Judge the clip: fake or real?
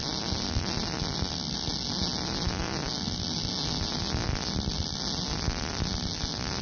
real